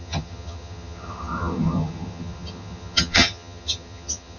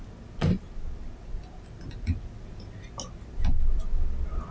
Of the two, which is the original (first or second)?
second